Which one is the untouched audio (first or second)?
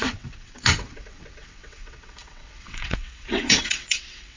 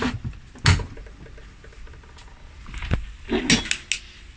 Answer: second